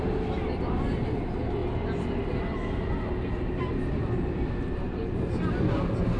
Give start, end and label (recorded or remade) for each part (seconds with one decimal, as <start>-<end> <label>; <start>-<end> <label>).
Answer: 0.0-6.2 recorded